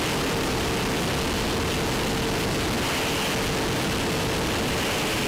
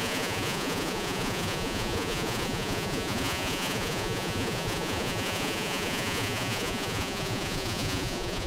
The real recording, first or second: first